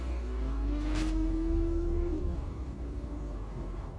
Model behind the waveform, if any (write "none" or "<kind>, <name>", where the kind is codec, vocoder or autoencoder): codec, DAC